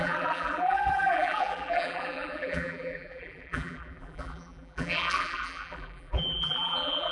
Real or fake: fake